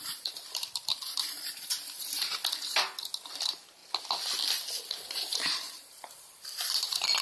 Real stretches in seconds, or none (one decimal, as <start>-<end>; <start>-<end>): 2.4-3.3; 3.8-4.9